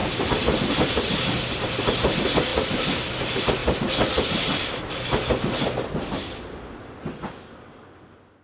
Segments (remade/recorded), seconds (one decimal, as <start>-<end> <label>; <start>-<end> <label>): 0.0-8.4 recorded